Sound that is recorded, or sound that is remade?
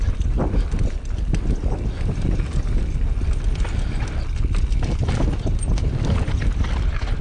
recorded